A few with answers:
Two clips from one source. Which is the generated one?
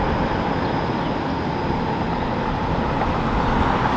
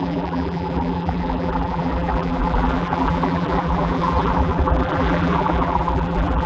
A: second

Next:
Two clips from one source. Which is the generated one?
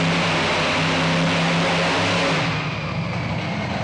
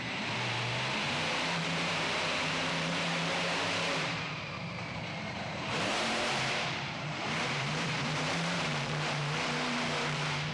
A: second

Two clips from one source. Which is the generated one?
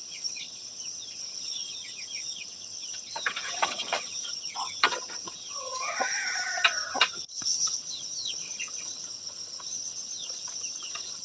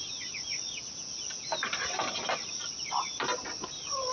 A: first